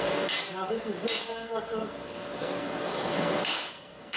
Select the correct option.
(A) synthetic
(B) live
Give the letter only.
A